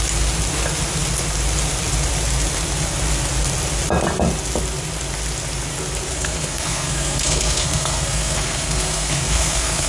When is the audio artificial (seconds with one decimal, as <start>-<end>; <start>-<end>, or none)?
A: 6.1-9.9

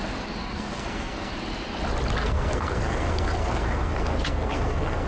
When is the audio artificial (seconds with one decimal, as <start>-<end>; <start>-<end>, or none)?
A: 0.4-1.3; 2.2-5.1

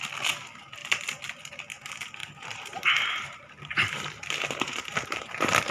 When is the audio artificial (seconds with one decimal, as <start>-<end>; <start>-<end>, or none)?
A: 2.2-5.7

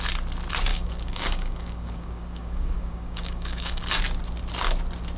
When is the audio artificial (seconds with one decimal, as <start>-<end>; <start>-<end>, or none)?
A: 0.7-3.8

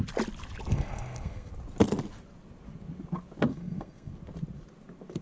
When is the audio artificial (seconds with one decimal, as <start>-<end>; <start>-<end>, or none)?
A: 0.7-1.5; 3.5-4.1

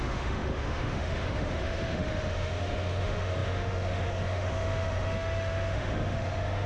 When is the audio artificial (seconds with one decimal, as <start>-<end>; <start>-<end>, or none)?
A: 0.0-6.7

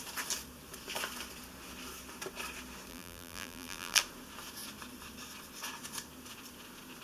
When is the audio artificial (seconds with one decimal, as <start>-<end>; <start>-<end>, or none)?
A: 2.9-4.0

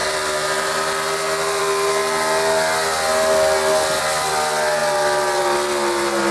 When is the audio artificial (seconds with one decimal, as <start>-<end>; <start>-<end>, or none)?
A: none